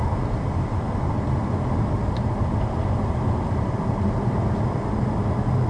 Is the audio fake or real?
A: real